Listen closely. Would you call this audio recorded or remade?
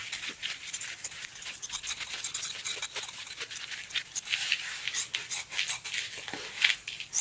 recorded